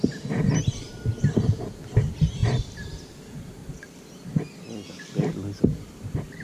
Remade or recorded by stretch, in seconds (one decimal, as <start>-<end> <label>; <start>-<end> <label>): 0.0-2.4 remade; 2.4-3.2 recorded; 3.2-3.6 remade; 3.6-5.0 recorded; 5.0-6.4 remade